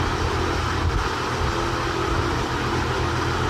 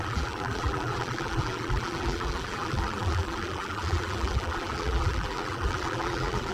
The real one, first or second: first